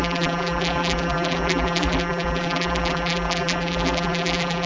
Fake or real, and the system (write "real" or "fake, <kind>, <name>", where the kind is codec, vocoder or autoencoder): fake, vocoder, BigVGAN v2